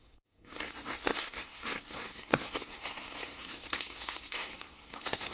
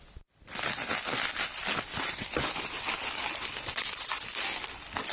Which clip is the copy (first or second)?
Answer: first